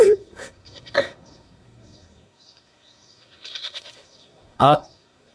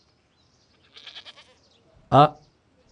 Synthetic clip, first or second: first